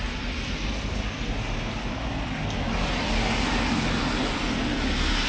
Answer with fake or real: real